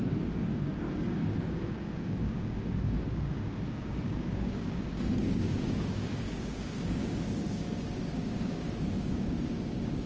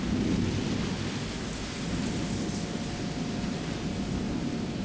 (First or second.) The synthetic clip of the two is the first